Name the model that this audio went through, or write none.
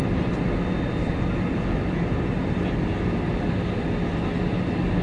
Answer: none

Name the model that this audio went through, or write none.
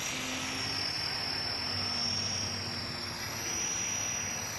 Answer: none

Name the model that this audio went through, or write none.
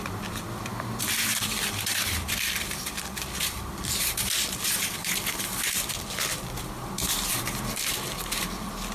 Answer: vocoder, BigVGAN v2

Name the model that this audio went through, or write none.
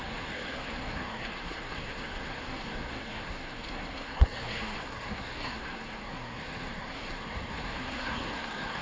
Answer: codec, SNAC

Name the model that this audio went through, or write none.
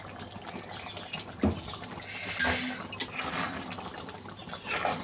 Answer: none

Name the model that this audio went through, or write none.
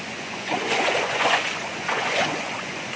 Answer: vocoder, Vocos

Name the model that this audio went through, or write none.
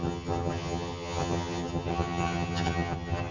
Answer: vocoder, HiFi-GAN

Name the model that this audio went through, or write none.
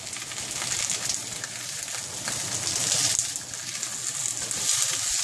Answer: none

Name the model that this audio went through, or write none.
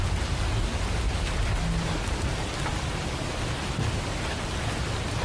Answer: none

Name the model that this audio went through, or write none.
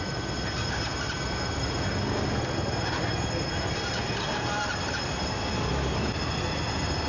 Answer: none